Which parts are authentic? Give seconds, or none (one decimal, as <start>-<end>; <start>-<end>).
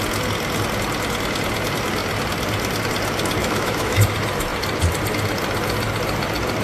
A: 0.0-3.4; 4.0-6.6